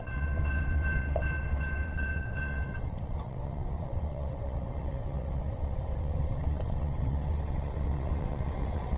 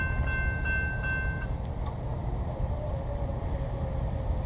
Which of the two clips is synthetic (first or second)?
first